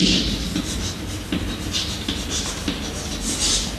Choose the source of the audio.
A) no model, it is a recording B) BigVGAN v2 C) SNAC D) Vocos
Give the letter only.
A